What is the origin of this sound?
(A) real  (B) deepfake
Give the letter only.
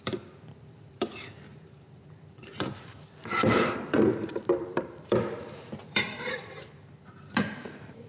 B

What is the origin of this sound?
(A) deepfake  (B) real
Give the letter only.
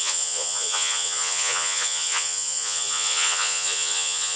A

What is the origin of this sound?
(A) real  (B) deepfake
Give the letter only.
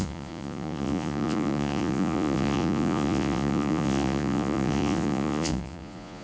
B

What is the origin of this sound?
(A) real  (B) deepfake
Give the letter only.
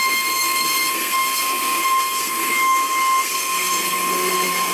B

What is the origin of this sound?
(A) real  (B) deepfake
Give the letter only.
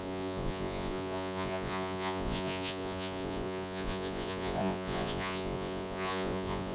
B